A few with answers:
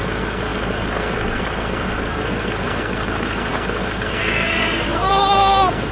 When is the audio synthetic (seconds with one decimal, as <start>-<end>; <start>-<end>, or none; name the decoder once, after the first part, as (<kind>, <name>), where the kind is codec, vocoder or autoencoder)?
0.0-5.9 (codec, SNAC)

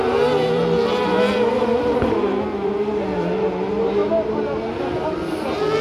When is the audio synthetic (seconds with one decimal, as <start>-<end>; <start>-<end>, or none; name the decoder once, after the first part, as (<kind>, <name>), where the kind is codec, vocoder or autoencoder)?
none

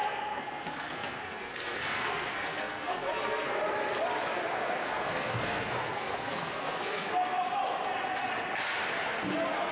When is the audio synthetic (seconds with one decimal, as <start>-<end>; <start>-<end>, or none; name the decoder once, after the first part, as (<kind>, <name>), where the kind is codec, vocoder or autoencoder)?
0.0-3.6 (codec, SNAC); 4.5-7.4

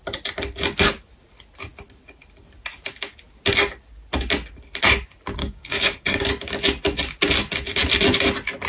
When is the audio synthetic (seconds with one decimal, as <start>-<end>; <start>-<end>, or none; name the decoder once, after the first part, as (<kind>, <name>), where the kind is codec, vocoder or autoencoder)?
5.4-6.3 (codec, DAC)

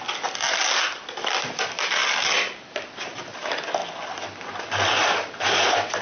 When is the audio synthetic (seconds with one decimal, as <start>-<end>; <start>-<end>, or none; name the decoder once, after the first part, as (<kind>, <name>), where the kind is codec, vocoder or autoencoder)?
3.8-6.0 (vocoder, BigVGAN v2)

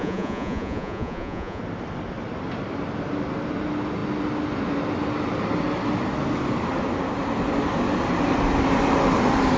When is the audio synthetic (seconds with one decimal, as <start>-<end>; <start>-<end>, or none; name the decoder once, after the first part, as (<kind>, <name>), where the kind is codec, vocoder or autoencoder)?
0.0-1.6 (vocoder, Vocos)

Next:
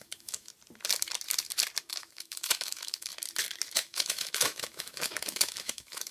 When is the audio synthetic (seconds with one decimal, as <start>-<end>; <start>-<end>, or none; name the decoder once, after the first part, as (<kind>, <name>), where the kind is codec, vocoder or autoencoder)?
0.0-0.5 (autoencoder, DAC-VAE); 1.8-3.1; 3.7-6.1